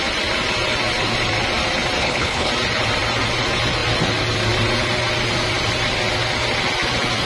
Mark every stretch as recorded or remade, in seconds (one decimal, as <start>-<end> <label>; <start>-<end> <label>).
0.0-2.0 recorded; 2.0-2.5 remade; 2.5-7.3 recorded